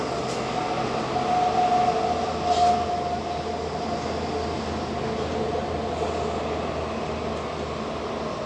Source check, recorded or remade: recorded